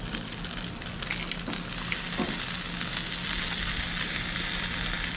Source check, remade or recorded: recorded